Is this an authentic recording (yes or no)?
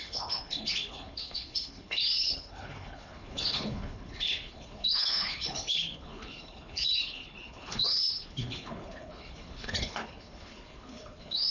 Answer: no